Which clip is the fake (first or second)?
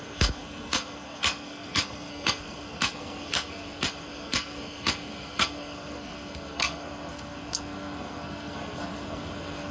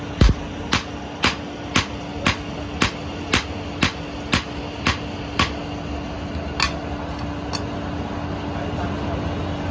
first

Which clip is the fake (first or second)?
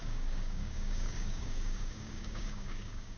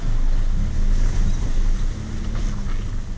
first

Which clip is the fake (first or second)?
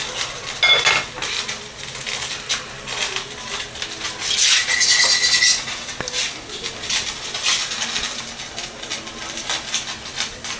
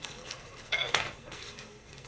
second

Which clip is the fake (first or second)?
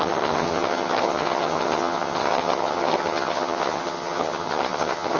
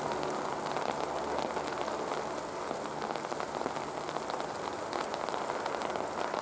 first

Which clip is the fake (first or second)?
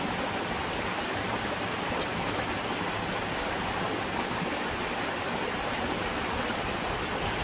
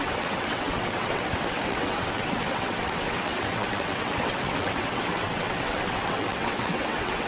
second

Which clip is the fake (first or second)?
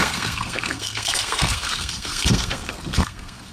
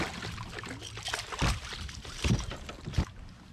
first